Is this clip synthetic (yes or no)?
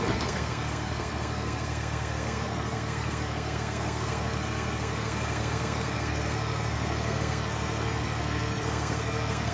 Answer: yes